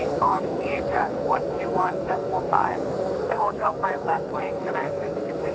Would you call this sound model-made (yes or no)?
yes